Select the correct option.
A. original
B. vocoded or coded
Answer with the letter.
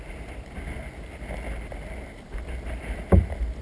A